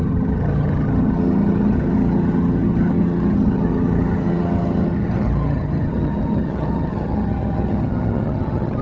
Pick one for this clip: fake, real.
fake